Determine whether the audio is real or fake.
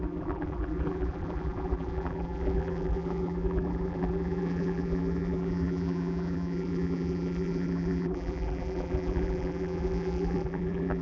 fake